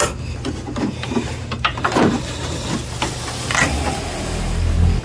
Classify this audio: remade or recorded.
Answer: recorded